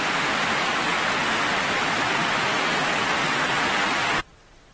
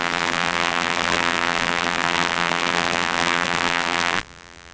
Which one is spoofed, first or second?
second